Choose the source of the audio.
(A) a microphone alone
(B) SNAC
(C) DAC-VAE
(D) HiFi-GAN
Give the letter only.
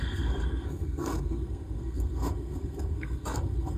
B